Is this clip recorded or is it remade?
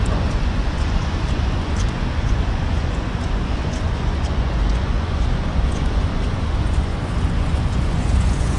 remade